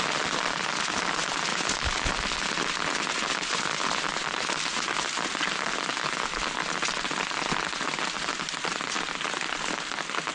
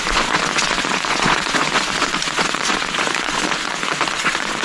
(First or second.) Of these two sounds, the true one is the first